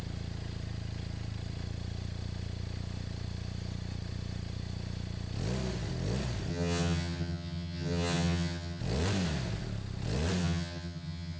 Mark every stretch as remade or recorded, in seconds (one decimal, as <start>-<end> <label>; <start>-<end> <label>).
0.0-6.5 recorded; 6.5-8.8 remade; 8.8-10.4 recorded; 10.4-11.4 remade